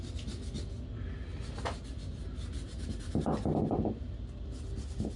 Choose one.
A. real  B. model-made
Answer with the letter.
A